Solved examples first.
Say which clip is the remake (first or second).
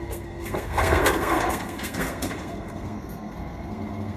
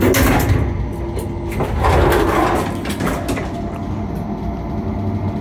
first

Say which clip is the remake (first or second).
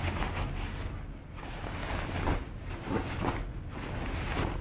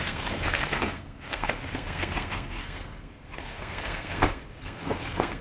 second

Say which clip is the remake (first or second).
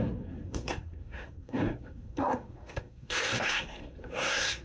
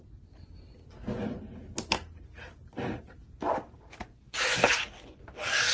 first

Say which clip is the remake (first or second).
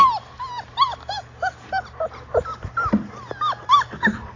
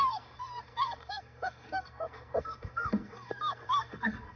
second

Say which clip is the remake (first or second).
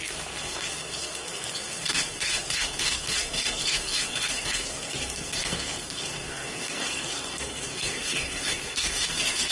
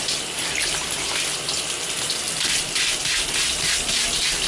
first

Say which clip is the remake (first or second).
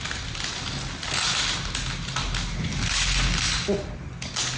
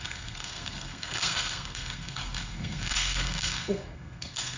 second